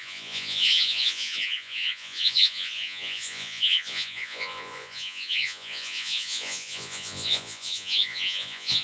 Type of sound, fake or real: fake